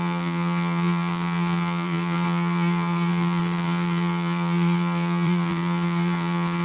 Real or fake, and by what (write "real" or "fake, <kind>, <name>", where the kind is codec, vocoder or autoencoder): fake, vocoder, BigVGAN v2